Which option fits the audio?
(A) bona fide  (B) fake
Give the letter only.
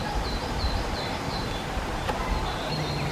A